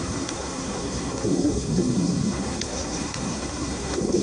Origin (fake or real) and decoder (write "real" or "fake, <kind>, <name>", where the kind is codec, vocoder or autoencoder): fake, codec, SNAC